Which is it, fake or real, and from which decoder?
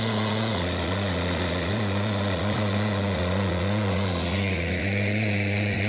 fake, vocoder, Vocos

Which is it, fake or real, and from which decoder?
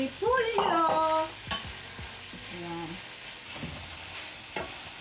real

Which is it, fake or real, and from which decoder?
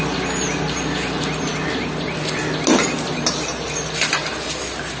real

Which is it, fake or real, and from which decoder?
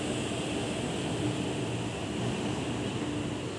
real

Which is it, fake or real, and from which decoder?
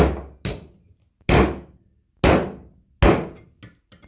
real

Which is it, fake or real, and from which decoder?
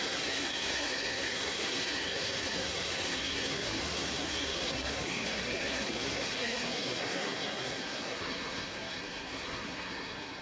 fake, codec, SNAC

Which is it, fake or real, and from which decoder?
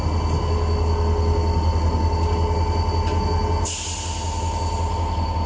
real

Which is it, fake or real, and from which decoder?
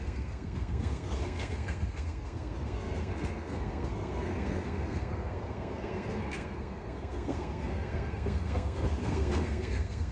fake, codec, SNAC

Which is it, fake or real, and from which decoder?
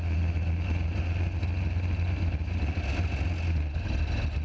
real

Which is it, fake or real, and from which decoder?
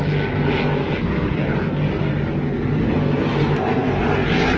real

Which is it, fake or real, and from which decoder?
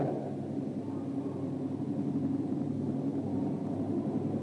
real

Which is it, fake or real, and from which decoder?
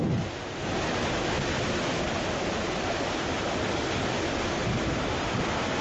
real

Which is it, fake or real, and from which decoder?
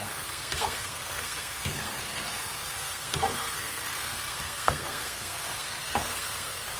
fake, codec, SNAC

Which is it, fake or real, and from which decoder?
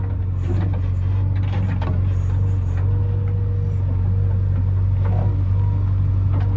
real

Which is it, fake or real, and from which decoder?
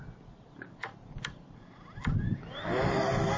real